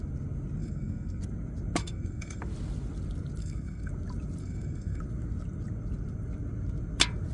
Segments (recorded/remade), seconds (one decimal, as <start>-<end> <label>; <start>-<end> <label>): 0.0-0.6 recorded; 0.6-1.2 remade; 1.2-1.8 recorded; 1.8-2.4 remade; 2.4-3.4 recorded; 3.4-3.9 remade; 3.9-4.4 recorded; 4.4-5.0 remade; 5.0-7.3 recorded